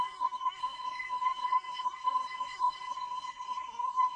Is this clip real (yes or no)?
no